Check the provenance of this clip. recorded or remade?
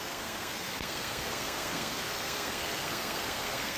remade